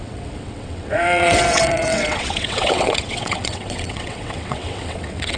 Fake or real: fake